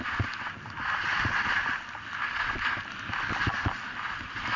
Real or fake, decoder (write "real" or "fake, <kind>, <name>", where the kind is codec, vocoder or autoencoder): real